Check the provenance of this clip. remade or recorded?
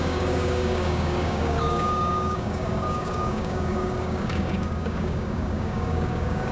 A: remade